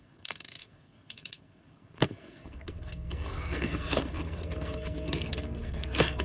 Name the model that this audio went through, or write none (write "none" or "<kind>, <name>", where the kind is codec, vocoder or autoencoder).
codec, SNAC